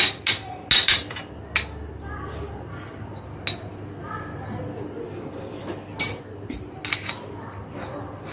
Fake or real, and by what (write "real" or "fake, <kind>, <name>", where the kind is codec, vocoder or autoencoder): real